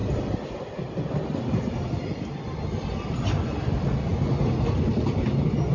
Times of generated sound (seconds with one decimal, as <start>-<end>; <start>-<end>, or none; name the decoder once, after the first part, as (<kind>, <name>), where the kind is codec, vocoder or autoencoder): 0.0-4.1 (vocoder, BigVGAN v2); 4.9-5.7